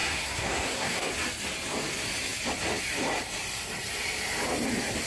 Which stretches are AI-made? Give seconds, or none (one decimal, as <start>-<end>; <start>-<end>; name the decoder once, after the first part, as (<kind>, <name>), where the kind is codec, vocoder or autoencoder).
0.0-1.1 (codec, SNAC)